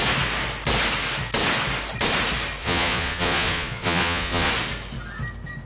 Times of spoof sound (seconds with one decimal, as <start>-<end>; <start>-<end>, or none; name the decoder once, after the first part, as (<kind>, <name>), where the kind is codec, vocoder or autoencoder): 2.6-4.5 (vocoder, Vocos)